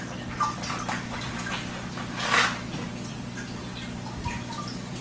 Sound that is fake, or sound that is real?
real